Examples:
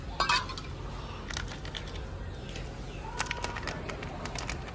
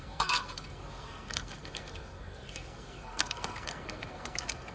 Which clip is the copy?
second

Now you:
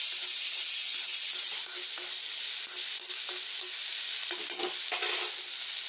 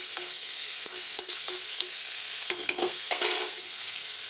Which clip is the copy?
second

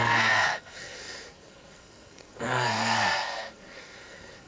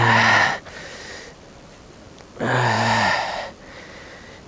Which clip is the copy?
first